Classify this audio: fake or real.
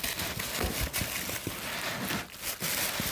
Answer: real